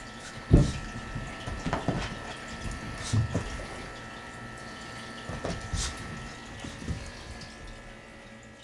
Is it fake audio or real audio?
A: real